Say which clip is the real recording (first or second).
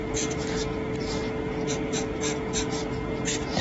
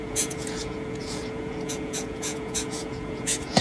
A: first